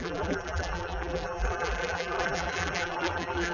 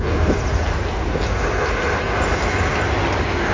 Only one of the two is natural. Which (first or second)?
second